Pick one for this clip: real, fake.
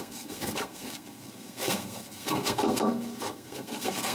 fake